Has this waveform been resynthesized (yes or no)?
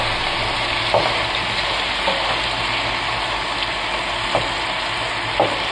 no